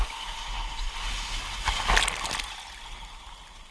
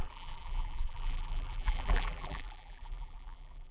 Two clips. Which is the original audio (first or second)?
first